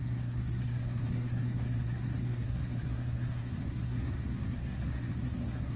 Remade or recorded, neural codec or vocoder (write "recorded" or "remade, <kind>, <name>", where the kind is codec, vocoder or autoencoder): remade, codec, SNAC